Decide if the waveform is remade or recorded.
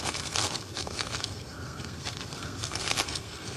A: remade